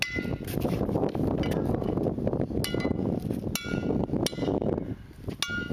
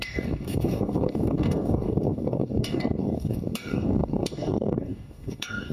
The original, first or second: first